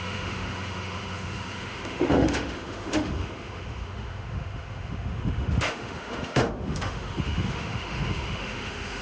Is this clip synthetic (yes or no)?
yes